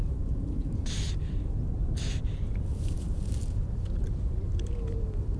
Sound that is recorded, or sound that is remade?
remade